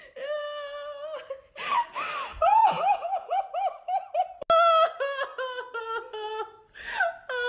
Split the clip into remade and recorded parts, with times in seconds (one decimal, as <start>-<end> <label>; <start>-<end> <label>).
0.0-2.3 recorded; 2.3-3.4 remade; 3.4-7.5 recorded